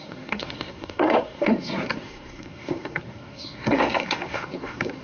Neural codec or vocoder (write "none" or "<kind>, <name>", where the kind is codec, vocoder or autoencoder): codec, SNAC